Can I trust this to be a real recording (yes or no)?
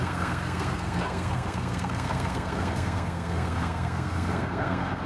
no